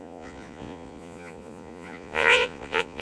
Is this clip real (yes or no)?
no